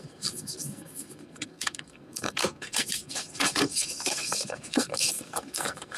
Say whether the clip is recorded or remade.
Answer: remade